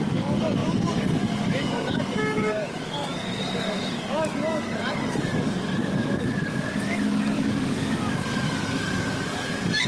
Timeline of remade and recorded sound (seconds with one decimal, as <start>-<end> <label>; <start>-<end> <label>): 0.0-9.9 remade